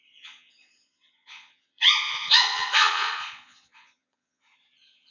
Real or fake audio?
fake